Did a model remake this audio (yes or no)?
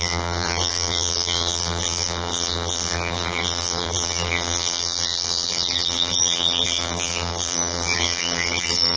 yes